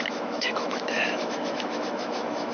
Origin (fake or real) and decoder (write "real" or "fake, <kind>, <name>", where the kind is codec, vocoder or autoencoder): fake, autoencoder, DAC-VAE